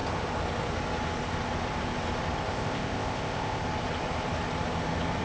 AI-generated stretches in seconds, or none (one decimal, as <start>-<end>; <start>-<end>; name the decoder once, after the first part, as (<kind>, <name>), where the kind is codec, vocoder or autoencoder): 2.5-3.6 (codec, ZipCodec)